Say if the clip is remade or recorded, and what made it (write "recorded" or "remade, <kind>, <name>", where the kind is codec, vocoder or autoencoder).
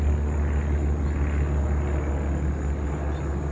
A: recorded